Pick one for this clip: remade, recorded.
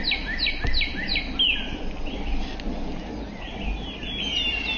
recorded